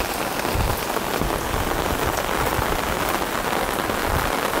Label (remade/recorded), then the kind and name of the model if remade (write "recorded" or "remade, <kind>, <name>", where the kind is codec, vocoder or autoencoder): recorded